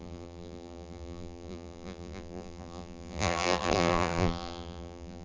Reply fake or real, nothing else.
fake